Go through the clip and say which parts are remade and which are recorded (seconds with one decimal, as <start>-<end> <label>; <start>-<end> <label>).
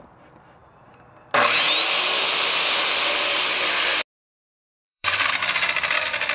0.0-4.8 recorded; 4.8-5.3 remade; 5.3-6.3 recorded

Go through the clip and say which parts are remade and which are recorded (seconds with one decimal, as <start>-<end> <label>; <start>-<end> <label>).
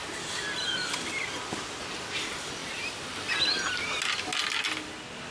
0.0-2.6 recorded; 2.6-3.8 remade; 3.8-5.3 recorded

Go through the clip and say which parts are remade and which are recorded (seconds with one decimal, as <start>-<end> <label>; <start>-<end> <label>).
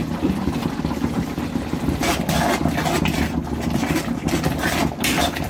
0.0-5.5 recorded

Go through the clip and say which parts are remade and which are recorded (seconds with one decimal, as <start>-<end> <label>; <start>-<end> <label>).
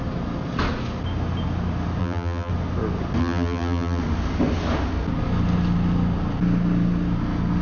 0.0-2.0 recorded; 2.0-2.5 remade; 2.5-3.2 recorded; 3.2-4.0 remade; 4.0-7.6 recorded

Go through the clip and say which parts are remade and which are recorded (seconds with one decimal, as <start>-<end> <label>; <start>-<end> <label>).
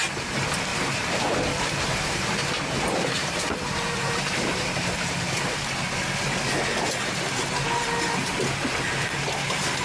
0.0-0.7 recorded; 0.7-5.8 remade; 5.8-9.8 recorded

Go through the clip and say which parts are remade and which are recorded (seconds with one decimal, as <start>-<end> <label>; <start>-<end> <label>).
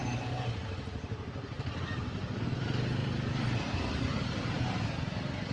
0.0-3.0 recorded; 3.0-4.5 remade; 4.5-5.5 recorded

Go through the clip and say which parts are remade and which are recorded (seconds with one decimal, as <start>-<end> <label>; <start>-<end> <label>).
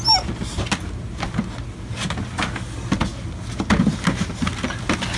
0.0-5.2 recorded